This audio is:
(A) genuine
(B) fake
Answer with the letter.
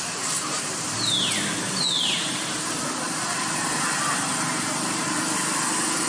A